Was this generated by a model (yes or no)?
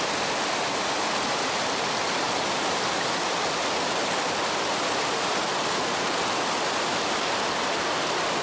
no